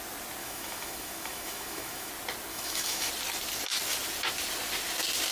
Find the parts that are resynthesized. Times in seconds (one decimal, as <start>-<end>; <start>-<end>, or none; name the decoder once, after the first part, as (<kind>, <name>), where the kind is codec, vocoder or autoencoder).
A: 0.4-2.1 (autoencoder, DAC-VAE); 2.5-3.1